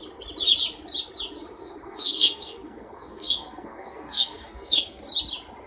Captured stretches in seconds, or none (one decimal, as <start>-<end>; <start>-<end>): 0.0-1.6; 5.0-5.7